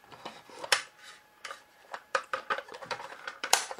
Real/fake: fake